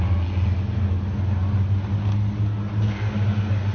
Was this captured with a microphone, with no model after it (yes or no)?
yes